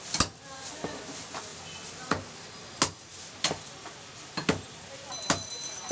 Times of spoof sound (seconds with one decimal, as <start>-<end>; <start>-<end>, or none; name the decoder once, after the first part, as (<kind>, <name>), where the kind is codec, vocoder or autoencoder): none